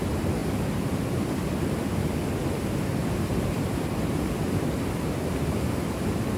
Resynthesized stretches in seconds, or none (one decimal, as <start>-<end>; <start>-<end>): 0.0-6.4